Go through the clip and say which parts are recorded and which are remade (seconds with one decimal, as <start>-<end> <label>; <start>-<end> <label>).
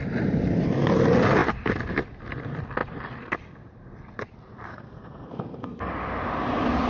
0.0-4.7 recorded; 4.7-5.9 remade; 5.9-6.9 recorded